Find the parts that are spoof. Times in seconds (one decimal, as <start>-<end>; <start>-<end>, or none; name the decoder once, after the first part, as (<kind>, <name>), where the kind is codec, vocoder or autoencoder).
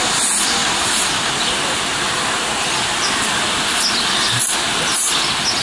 none